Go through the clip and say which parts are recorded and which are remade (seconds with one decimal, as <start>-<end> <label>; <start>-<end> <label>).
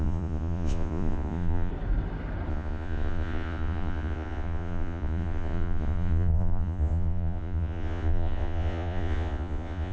0.0-1.7 remade; 1.7-2.5 recorded; 2.5-9.9 remade